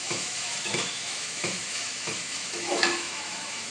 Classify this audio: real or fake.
fake